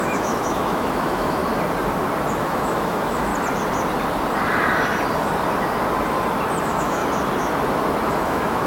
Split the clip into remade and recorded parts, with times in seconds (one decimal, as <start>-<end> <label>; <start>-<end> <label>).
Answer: 0.0-1.4 remade; 1.4-2.3 recorded; 2.3-3.3 remade; 3.3-6.6 recorded; 6.6-7.0 remade; 7.0-8.1 recorded; 8.1-8.7 remade